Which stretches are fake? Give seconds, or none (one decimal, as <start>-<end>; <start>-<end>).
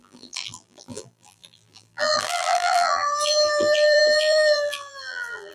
0.0-5.5